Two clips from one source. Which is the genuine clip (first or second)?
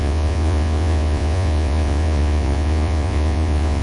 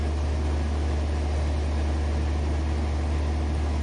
second